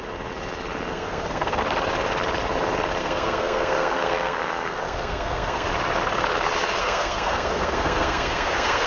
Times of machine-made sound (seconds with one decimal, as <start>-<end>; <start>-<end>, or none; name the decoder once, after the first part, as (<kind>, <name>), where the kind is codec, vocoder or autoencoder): 0.9-1.6 (codec, SNAC); 3.0-5.7; 6.8-8.9